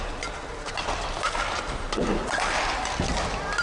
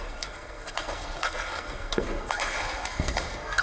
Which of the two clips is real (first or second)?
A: first